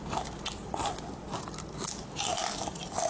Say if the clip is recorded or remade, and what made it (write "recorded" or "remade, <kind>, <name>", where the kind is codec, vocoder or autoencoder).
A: remade, vocoder, BigVGAN v2